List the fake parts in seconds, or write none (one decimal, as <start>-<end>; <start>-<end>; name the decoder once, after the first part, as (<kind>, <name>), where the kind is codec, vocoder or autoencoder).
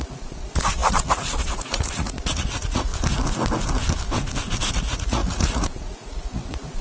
0.0-2.9 (vocoder, Vocos); 4.7-6.8